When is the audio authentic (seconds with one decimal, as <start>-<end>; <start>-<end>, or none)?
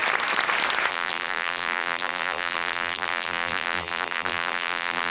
0.0-0.9